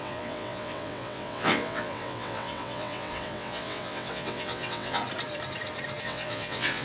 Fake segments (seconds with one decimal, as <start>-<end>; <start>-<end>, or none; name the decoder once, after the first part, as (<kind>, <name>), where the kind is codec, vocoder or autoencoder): 0.0-5.0 (vocoder, WaveNeXt); 6.0-6.8